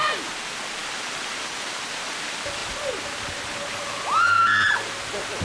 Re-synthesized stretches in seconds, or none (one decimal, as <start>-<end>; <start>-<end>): none